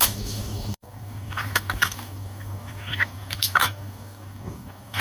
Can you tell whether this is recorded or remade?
remade